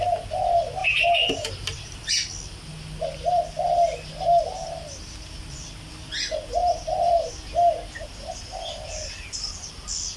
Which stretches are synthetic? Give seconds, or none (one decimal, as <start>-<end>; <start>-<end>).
0.8-2.1; 6.6-7.3